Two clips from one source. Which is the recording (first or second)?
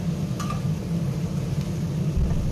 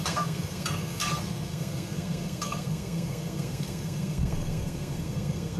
first